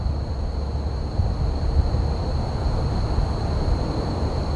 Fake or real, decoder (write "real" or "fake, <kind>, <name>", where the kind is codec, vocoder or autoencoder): real